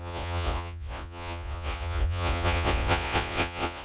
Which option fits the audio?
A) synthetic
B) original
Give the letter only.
A